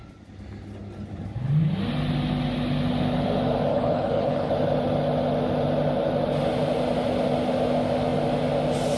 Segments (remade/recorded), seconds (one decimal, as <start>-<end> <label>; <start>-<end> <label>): 0.0-3.7 recorded; 3.7-4.5 remade; 4.5-9.0 recorded